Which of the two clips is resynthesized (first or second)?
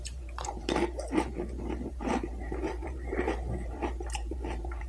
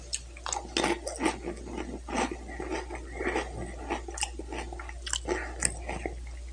first